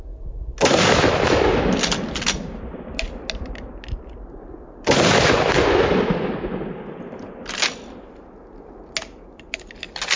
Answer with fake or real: real